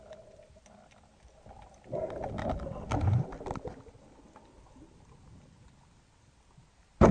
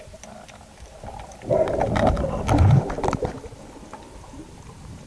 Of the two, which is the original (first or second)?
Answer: first